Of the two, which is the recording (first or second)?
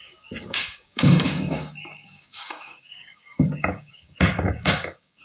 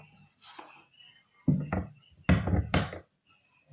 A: second